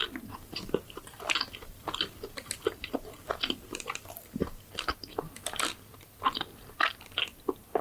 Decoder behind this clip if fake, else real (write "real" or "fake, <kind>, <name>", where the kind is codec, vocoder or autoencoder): real